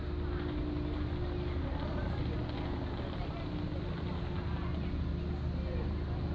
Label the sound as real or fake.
real